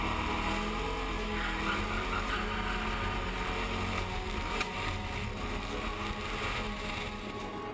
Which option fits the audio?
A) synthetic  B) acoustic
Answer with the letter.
B